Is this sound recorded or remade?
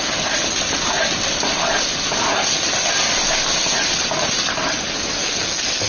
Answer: recorded